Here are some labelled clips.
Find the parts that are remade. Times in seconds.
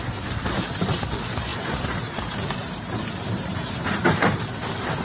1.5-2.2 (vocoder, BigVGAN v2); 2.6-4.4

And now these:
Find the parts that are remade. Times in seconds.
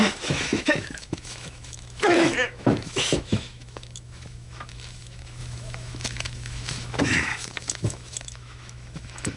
0.0-9.4 (autoencoder, DAC-VAE)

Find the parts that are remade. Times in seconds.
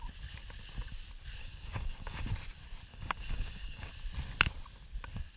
1.4-2.3 (codec, DAC); 2.9-3.9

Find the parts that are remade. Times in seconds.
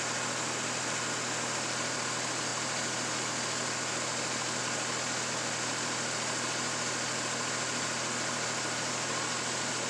none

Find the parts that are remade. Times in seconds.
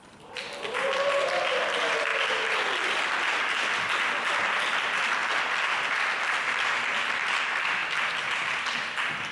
0.0-7.8 (vocoder, BigVGAN v2); 8.9-9.3